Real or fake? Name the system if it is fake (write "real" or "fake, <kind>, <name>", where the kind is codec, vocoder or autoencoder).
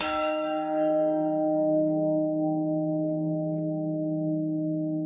fake, codec, DAC